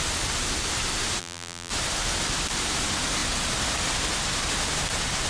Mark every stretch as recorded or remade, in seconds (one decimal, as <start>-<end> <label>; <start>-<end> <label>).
0.0-1.2 recorded; 1.2-1.7 remade; 1.7-5.3 recorded